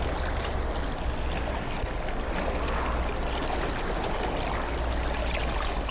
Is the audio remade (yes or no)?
no